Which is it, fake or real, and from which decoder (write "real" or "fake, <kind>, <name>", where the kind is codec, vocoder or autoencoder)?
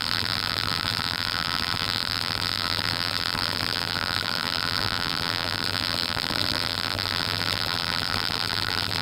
fake, vocoder, BigVGAN v2